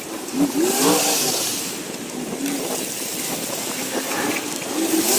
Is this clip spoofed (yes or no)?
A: no